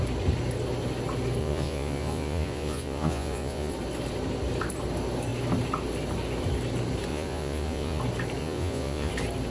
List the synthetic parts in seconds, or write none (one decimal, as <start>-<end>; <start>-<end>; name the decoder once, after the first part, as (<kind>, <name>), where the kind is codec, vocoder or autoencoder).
1.4-3.7 (vocoder, Vocos); 7.1-8.0; 8.4-9.1